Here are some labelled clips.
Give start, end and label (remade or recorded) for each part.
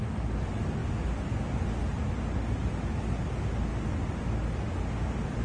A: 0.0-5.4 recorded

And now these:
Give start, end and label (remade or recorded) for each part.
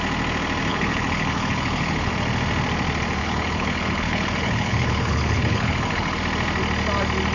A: 0.0-0.7 recorded; 0.7-2.1 remade; 2.1-3.2 recorded; 3.2-6.2 remade; 6.2-7.3 recorded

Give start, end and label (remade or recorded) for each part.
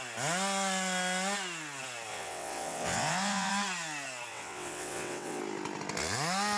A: 0.0-2.1 recorded; 2.1-3.5 remade; 3.5-4.3 recorded; 4.3-5.4 remade; 5.4-6.6 recorded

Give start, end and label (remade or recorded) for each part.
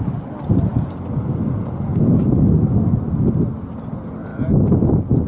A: 0.0-5.3 recorded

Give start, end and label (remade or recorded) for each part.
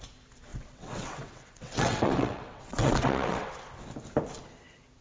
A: 0.0-0.5 recorded; 0.5-3.5 remade; 3.5-5.0 recorded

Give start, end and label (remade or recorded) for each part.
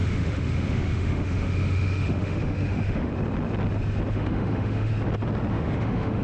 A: 0.0-3.1 remade; 3.1-4.1 recorded; 4.1-4.9 remade; 4.9-5.5 recorded; 5.5-6.2 remade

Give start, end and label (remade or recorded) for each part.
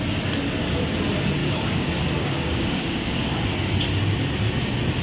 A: 0.0-1.4 recorded; 1.4-3.5 remade; 3.5-5.0 recorded